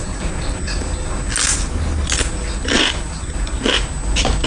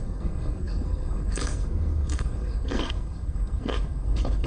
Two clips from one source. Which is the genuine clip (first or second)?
first